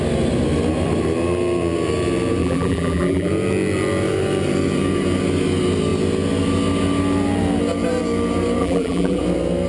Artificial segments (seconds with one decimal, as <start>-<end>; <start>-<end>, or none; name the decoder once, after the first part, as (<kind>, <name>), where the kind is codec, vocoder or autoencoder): 2.4-3.3 (vocoder, BigVGAN v2); 8.6-9.2